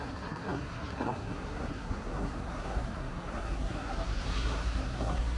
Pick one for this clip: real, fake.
fake